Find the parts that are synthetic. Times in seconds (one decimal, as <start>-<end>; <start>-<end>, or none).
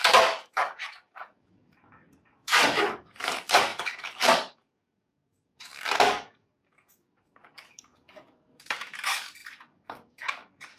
0.0-10.8